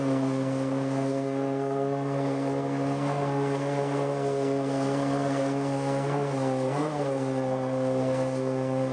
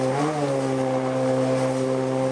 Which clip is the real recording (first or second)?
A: second